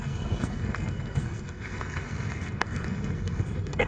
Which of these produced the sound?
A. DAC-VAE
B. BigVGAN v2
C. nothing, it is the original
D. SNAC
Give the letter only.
D